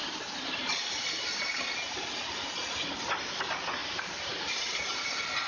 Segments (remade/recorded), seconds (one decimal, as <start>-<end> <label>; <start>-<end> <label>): 0.0-3.8 recorded; 3.8-5.0 remade; 5.0-5.5 recorded